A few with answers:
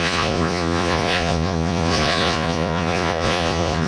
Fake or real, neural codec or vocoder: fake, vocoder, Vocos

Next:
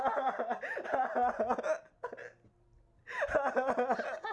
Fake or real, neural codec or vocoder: real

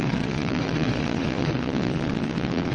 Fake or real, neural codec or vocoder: fake, vocoder, Vocos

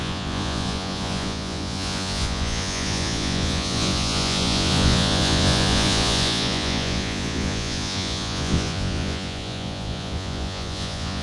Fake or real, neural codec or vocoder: fake, vocoder, Vocos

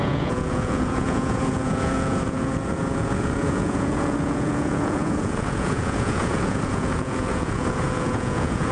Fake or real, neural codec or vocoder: fake, vocoder, Vocos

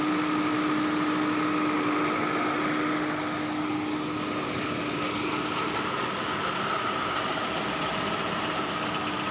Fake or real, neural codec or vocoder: real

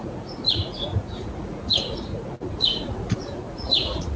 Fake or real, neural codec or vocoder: fake, vocoder, Vocos